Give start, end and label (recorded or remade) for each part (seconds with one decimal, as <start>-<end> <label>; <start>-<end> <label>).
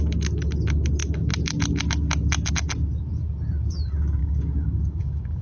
0.0-4.2 recorded; 4.2-5.4 remade